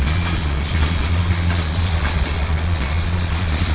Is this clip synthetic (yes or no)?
yes